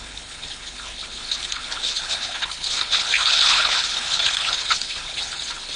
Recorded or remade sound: remade